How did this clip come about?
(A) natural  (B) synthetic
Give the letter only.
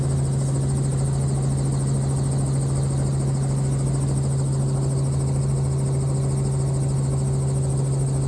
A